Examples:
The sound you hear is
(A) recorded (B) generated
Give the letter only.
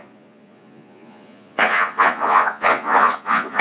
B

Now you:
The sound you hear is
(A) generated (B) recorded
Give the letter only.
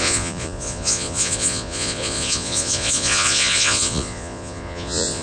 A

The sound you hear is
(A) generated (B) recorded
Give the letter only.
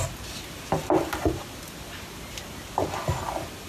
B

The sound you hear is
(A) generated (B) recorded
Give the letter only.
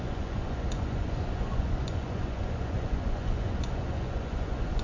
A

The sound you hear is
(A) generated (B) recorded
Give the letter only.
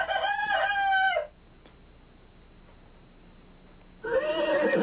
B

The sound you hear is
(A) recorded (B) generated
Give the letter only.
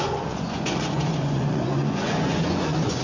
B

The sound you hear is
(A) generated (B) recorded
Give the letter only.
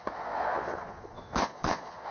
A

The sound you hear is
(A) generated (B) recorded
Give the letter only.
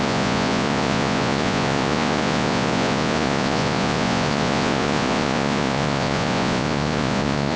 A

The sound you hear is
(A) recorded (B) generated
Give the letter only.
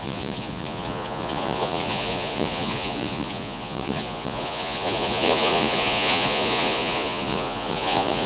B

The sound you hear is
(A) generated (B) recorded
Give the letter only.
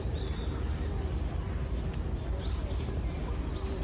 B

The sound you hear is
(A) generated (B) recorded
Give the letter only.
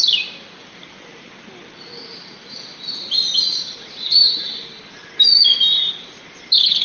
B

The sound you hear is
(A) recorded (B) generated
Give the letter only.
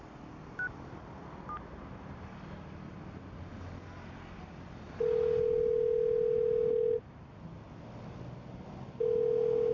A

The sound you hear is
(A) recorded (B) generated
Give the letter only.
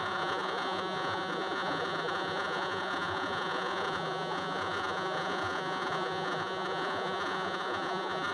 B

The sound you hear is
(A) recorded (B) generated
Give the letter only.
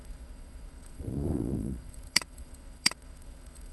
B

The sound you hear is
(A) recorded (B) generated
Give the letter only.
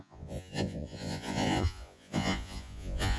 B